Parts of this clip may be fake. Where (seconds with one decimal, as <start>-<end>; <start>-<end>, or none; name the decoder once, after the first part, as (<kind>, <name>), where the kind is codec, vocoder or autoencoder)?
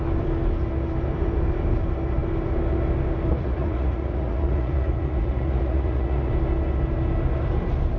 3.3-6.3 (vocoder, Vocos)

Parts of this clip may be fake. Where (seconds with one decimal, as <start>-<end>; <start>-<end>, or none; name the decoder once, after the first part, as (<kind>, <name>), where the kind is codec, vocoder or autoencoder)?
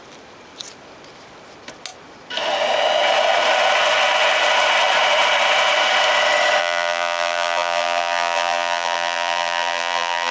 6.6-10.3 (vocoder, BigVGAN v2)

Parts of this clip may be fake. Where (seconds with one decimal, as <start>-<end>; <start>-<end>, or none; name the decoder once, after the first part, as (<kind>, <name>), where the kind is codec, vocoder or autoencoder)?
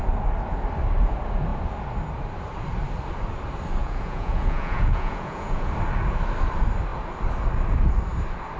3.8-5.7 (vocoder, Vocos)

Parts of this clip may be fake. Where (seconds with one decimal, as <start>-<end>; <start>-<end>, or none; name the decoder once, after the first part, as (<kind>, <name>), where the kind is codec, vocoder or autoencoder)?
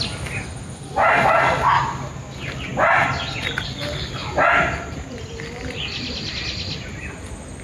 4.2-6.3 (vocoder, BigVGAN v2)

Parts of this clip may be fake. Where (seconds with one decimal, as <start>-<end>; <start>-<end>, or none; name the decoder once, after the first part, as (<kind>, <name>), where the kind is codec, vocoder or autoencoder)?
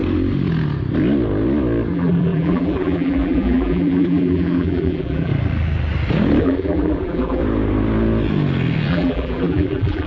1.9-5.3 (vocoder, BigVGAN v2); 6.4-7.4; 8.9-10.1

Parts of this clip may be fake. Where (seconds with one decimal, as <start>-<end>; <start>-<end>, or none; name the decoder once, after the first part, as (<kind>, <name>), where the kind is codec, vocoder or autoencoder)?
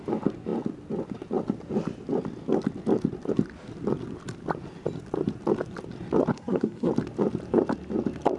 6.3-6.9 (codec, SNAC)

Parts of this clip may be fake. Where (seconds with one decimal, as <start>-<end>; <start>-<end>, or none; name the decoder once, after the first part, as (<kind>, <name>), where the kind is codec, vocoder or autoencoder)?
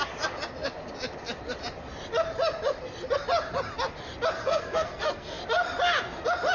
4.4-5.4 (codec, SNAC)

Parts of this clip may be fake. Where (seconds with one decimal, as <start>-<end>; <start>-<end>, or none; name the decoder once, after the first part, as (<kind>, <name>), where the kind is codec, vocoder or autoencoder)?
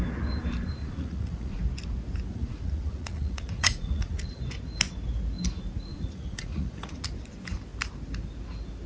0.8-1.6 (vocoder, Vocos); 2.3-4.4; 5.9-7.0